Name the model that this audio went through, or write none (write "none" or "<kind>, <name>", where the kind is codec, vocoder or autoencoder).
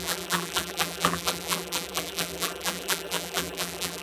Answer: vocoder, BigVGAN v2